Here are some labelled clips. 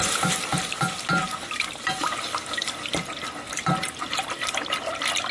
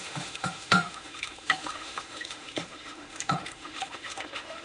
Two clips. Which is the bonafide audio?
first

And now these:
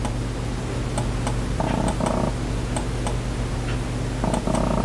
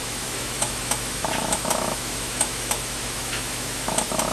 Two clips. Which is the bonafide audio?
first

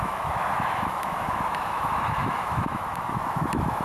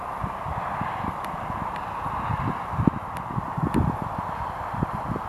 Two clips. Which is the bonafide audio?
second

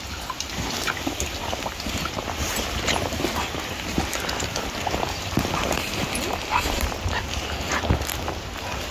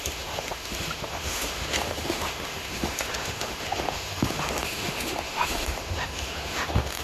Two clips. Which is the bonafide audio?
first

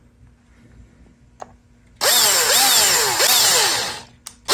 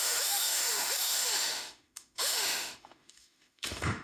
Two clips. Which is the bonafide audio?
first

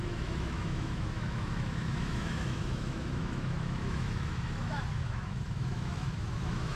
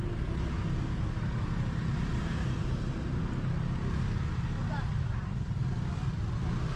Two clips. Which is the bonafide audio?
second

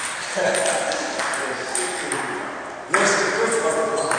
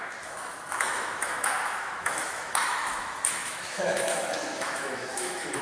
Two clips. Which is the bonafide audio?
first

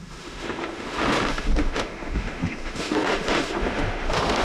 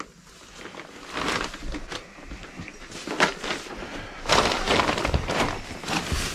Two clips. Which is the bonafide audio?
second